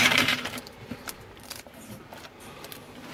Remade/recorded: remade